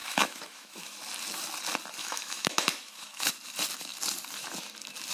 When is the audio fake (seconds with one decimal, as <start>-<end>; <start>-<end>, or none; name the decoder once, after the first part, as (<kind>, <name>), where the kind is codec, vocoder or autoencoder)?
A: 0.0-1.0 (autoencoder, DAC-VAE); 2.0-3.3